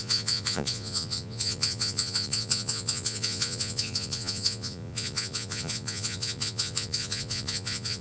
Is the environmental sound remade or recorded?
remade